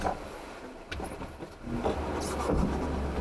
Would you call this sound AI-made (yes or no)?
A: no